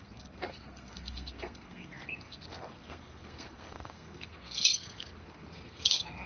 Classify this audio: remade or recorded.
remade